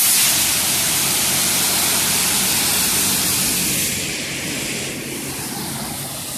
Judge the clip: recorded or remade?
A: recorded